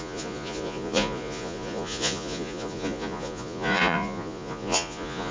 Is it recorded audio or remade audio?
remade